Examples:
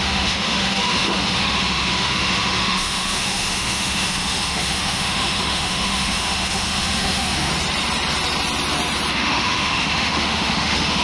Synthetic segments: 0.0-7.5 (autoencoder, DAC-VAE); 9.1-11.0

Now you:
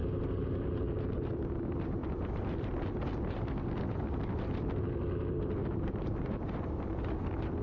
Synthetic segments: 0.0-0.7 (vocoder, BigVGAN v2); 2.0-2.9; 5.6-7.0

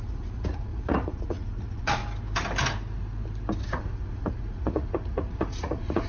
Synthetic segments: 0.0-2.0 (vocoder, Vocos); 3.6-6.1

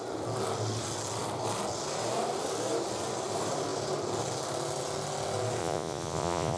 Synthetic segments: 5.6-6.6 (vocoder, Vocos)

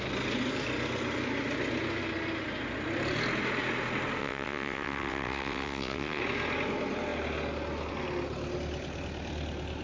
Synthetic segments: 4.2-6.2 (vocoder, WaveNeXt)

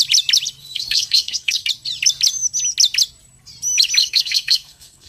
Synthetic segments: 0.6-1.7 (codec, SNAC); 4.0-5.1

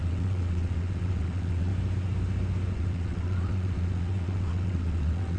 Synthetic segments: 0.0-1.7 (vocoder, WaveNeXt); 2.7-5.4

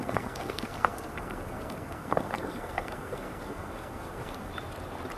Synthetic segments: 0.0-4.5 (codec, SNAC)